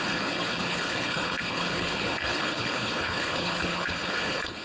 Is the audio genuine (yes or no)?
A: no